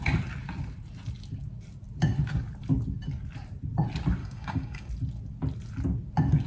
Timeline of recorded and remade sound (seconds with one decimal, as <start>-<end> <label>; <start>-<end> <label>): 0.0-4.2 recorded; 4.2-4.9 remade; 4.9-6.5 recorded